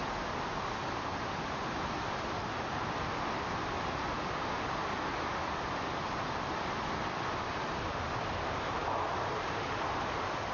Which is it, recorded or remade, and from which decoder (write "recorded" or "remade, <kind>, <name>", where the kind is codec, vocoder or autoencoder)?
recorded